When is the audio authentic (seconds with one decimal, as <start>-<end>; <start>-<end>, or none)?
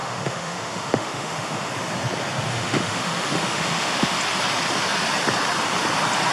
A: 1.7-2.5; 4.2-6.3